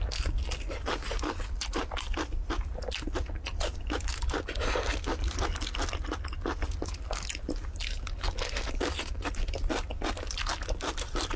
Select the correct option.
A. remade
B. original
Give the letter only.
B